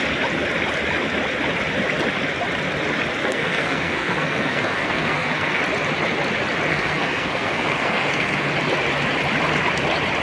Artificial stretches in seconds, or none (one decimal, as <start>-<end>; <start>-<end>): 3.2-5.6; 6.7-8.5